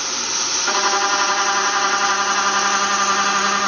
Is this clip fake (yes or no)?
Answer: no